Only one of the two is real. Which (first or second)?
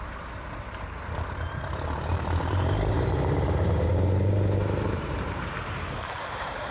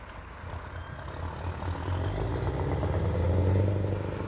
second